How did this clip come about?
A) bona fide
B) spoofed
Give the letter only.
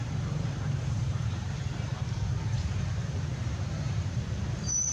B